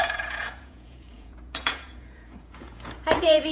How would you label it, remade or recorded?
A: remade